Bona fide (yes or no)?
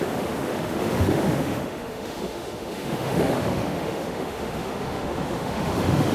no